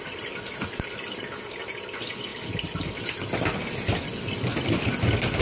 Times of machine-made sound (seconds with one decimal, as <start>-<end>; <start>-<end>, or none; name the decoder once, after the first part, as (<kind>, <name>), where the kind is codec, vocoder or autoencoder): none